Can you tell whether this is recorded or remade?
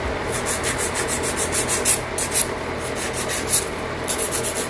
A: recorded